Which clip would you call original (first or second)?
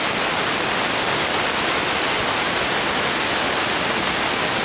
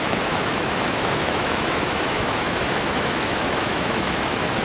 first